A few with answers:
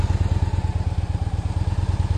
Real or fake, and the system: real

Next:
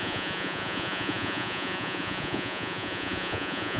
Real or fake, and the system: fake, vocoder, Vocos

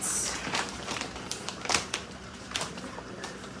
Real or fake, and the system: fake, vocoder, BigVGAN v2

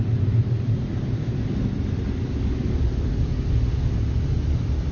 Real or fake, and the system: real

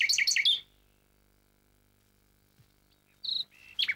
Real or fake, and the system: real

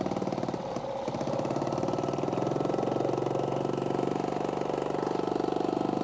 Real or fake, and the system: real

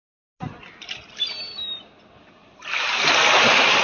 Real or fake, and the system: real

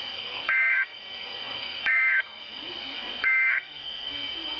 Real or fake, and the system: fake, codec, SNAC